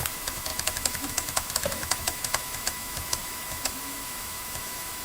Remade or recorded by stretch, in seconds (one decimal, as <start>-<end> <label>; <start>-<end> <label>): 0.0-5.0 remade